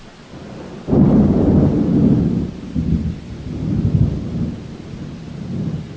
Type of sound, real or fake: real